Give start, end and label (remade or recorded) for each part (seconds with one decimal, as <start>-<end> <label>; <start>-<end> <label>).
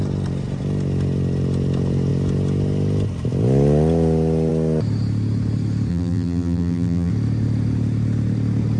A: 0.0-5.9 recorded; 5.9-7.1 remade; 7.1-8.8 recorded